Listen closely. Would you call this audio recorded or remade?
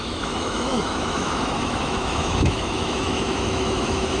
remade